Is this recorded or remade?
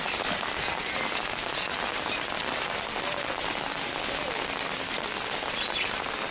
recorded